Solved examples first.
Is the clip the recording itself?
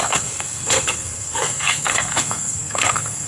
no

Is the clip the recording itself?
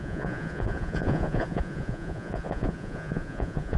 no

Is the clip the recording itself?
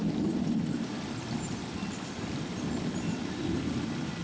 yes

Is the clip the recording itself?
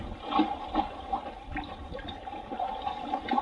yes